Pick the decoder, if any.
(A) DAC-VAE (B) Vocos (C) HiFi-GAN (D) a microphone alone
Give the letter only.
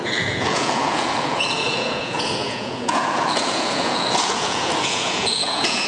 B